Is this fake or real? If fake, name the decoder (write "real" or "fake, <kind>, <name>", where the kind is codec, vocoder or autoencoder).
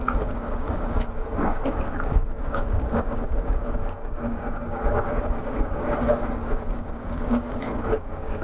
fake, codec, DAC